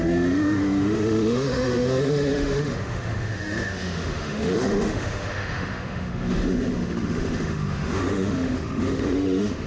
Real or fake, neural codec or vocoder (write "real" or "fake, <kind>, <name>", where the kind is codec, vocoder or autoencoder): fake, autoencoder, DAC-VAE